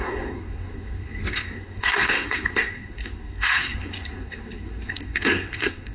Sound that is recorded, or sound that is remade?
remade